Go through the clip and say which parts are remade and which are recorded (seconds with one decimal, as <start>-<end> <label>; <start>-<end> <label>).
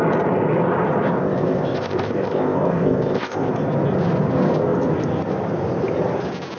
0.0-1.2 recorded; 1.2-3.5 remade; 3.5-6.6 recorded